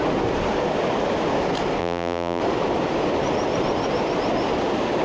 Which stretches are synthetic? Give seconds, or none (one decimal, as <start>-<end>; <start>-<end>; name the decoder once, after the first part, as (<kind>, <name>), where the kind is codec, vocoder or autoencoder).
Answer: 1.8-2.4 (vocoder, BigVGAN v2)